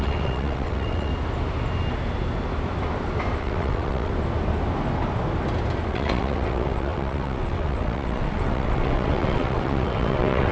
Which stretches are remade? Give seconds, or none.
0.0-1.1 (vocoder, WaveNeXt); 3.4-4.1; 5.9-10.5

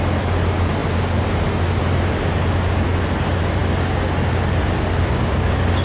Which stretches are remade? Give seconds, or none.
none

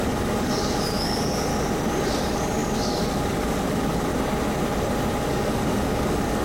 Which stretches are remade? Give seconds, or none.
0.0-1.5 (codec, DAC); 2.1-4.1; 5.3-6.4

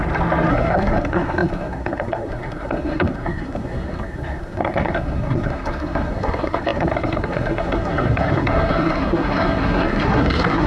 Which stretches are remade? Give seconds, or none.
0.5-10.7 (codec, SNAC)

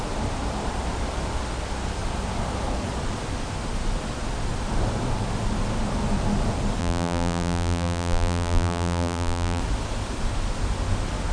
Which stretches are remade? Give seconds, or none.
6.8-9.6 (vocoder, BigVGAN v2)

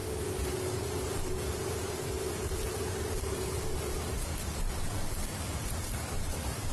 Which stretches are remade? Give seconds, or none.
none